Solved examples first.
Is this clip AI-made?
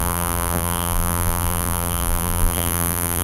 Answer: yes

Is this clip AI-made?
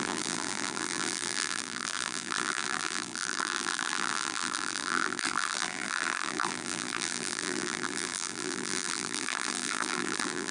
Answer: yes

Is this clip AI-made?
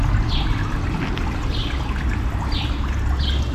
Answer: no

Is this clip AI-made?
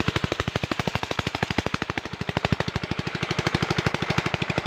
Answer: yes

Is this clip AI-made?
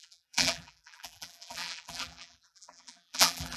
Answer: yes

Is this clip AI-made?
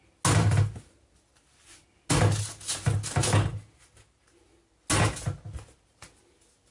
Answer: no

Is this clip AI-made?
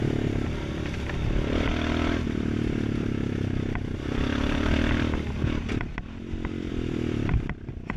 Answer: yes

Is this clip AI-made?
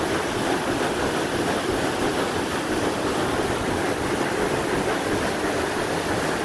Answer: no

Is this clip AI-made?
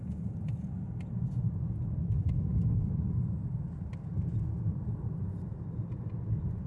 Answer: yes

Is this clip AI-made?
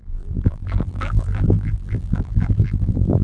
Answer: yes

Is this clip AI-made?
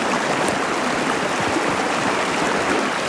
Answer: no